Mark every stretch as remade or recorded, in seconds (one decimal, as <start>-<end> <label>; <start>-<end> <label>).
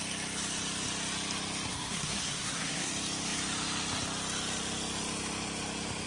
0.0-1.7 recorded; 1.7-2.9 remade; 2.9-6.1 recorded